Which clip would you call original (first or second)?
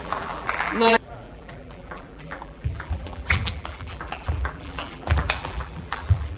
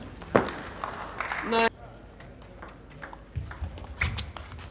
second